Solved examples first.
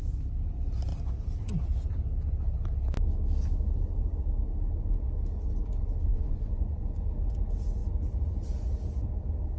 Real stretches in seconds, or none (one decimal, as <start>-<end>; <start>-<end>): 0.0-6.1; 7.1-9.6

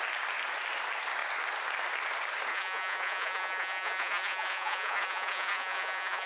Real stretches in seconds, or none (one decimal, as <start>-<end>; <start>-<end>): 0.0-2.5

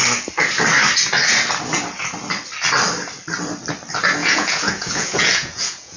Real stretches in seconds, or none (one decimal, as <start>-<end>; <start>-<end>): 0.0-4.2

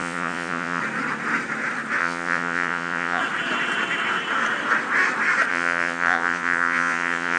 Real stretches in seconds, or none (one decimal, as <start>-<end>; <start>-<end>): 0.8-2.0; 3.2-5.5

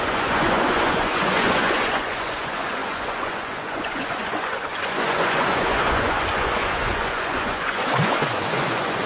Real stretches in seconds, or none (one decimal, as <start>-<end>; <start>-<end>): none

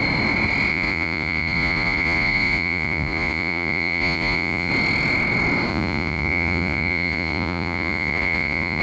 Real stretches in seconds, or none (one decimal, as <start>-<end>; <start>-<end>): 0.0-0.7; 4.7-5.7

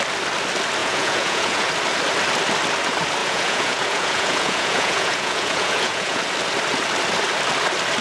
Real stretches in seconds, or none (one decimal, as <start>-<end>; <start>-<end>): 0.0-0.8; 1.7-3.2; 6.2-8.0

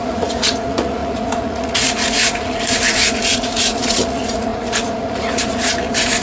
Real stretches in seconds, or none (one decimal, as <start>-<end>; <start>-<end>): none